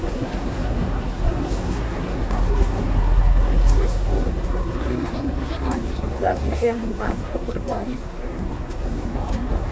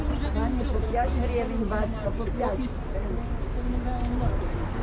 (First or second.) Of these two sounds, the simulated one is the first